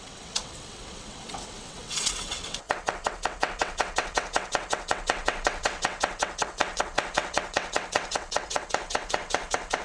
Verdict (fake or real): fake